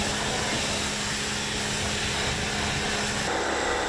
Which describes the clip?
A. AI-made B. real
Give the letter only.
B